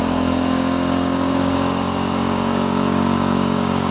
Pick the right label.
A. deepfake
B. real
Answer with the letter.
A